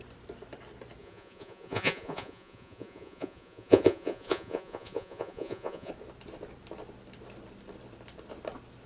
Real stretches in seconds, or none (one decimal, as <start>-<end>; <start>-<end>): 0.0-1.0; 5.9-8.9